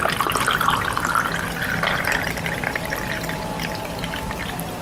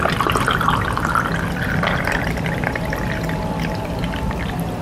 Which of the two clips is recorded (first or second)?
first